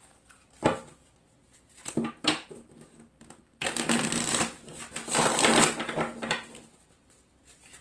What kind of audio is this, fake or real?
fake